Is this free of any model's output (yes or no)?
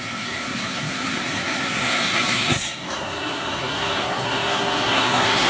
no